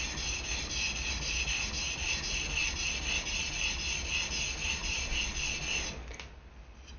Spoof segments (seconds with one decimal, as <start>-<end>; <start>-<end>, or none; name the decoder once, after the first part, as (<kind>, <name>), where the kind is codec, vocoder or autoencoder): none

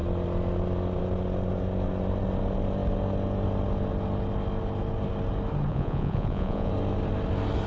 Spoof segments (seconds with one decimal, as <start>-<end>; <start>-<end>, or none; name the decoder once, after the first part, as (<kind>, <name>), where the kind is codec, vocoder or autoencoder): 5.7-6.7 (vocoder, Vocos)

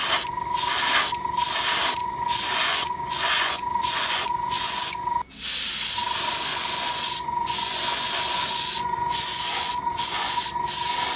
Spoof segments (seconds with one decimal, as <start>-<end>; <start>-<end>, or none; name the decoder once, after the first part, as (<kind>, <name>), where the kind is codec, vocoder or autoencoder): 2.0-5.2 (vocoder, Vocos); 6.5-10.5

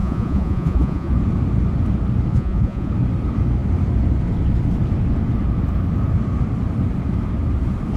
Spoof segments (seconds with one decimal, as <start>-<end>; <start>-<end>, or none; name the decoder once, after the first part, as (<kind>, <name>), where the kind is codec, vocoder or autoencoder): 0.0-1.1 (vocoder, Vocos); 2.3-2.9

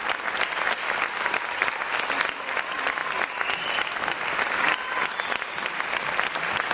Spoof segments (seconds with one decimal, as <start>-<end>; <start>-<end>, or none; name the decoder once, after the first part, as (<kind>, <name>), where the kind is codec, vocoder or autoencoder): none

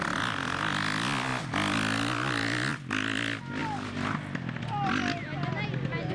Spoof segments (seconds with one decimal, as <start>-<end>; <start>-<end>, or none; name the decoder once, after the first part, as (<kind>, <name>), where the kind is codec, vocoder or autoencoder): none

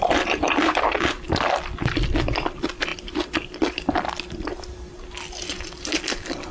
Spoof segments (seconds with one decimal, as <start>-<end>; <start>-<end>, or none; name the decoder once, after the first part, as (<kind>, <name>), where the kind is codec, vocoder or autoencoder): none

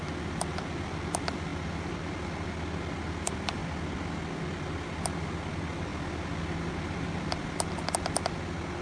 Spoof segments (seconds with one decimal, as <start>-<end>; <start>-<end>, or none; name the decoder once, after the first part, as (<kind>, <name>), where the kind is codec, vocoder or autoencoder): none